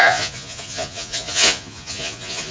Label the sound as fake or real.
fake